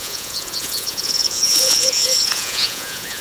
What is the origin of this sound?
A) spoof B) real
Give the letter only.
A